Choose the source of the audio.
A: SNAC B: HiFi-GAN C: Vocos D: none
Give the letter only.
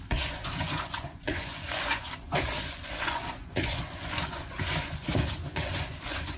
C